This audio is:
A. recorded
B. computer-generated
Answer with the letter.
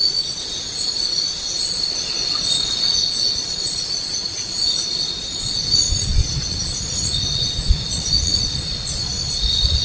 B